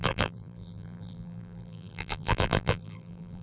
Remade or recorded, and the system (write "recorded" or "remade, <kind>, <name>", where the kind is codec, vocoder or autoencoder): remade, vocoder, BigVGAN v2